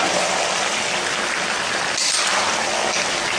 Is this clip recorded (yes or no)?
yes